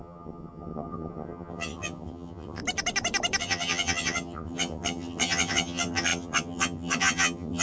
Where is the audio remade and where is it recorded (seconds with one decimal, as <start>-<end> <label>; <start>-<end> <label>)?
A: 0.0-2.6 remade; 2.6-3.4 recorded; 3.4-7.6 remade